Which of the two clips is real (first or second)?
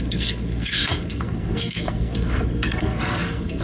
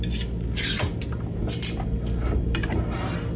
second